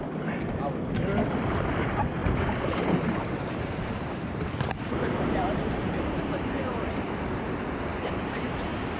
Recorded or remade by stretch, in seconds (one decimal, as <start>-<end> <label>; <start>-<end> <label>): 0.0-2.2 recorded; 2.2-7.1 remade; 7.1-7.9 recorded; 7.9-9.0 remade